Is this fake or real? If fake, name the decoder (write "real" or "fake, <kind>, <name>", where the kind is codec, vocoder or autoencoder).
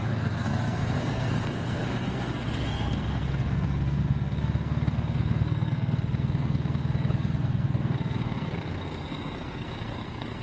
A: fake, codec, SNAC